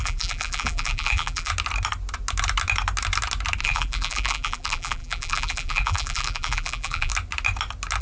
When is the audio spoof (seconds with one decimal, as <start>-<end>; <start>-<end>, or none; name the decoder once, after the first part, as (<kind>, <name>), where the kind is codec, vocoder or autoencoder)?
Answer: 0.0-1.5 (vocoder, BigVGAN v2); 3.6-7.1